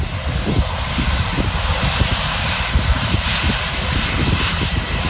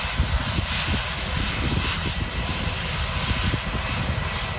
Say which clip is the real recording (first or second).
second